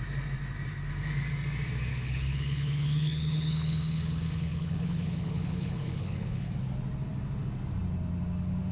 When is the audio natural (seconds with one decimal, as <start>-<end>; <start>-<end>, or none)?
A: 0.0-1.9; 6.5-8.7

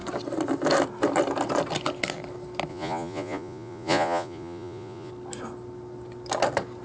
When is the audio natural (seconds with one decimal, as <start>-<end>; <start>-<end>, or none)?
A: 0.0-2.7; 5.1-6.8